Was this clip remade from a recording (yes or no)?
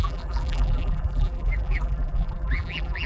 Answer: yes